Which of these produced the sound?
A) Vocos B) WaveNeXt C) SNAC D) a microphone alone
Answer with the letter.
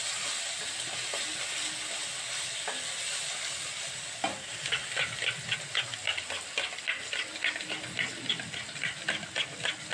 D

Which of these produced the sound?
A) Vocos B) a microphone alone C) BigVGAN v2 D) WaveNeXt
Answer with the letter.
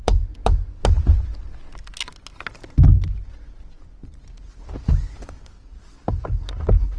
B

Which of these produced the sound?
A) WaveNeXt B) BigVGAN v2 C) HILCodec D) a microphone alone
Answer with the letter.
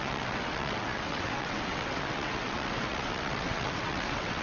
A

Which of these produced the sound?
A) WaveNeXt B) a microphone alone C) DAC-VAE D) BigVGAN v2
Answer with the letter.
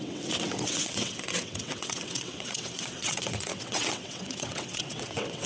A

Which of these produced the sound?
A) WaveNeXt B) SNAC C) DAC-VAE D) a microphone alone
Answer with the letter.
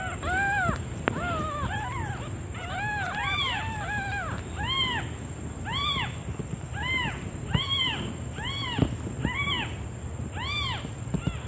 D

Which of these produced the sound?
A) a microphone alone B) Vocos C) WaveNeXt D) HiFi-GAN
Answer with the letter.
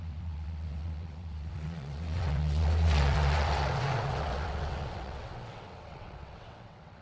C